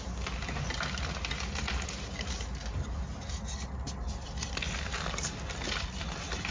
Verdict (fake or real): real